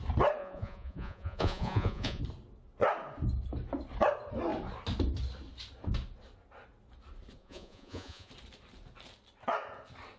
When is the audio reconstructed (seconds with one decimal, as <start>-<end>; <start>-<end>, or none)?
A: 0.4-2.2; 7.4-8.3

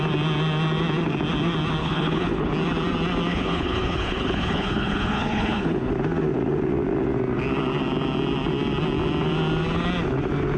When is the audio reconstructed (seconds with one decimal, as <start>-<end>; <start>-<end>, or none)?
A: 1.8-2.5; 3.3-5.9

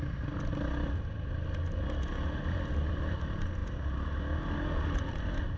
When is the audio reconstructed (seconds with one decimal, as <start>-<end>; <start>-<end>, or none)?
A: none